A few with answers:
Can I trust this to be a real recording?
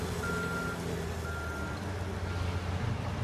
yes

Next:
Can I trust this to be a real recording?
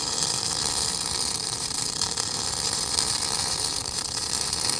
no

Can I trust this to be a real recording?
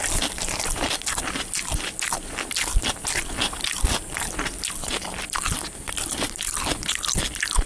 no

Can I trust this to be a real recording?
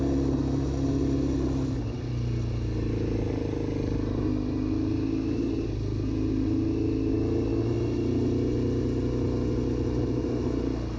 yes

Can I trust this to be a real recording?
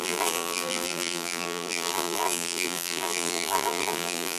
no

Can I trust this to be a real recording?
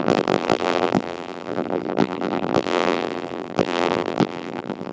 no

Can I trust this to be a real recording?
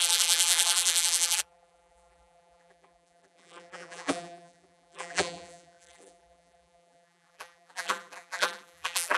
no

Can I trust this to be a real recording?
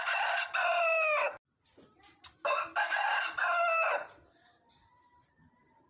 yes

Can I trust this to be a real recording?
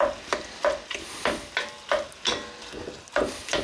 yes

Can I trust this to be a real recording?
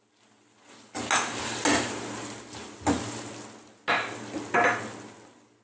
yes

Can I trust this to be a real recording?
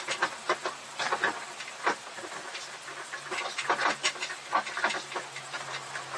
yes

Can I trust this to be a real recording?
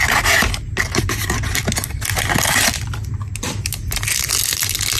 yes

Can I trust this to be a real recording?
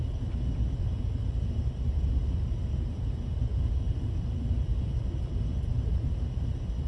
yes